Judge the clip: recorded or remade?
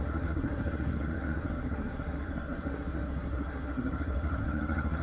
remade